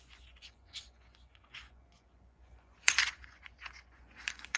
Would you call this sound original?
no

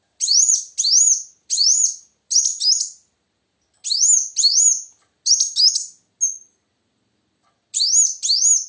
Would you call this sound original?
yes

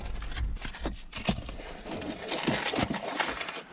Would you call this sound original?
yes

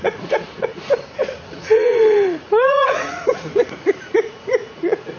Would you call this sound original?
no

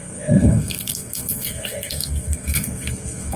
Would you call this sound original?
no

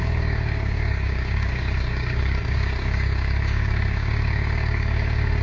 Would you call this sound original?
no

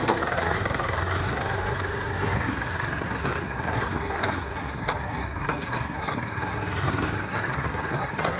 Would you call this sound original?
no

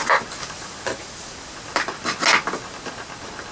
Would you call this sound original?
yes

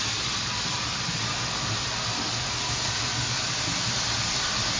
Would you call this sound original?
yes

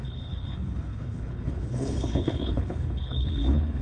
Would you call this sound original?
no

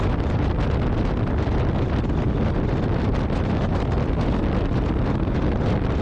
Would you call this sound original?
yes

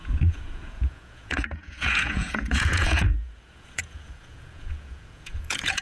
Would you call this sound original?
no